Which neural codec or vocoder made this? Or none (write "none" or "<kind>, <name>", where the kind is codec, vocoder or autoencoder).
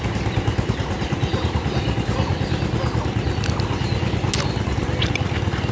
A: none